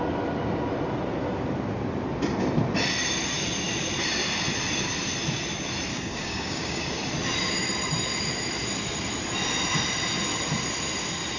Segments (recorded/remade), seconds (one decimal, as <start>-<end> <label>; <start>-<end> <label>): 0.0-5.9 recorded; 5.9-6.8 remade; 6.8-11.4 recorded